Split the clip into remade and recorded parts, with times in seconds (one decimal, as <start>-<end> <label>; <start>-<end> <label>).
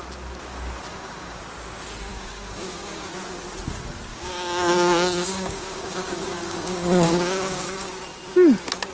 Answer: 0.0-0.9 recorded; 0.9-1.4 remade; 1.4-2.1 recorded; 2.1-3.1 remade; 3.1-4.1 recorded; 4.1-7.9 remade; 7.9-8.9 recorded